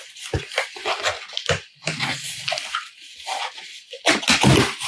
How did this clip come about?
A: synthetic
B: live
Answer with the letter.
B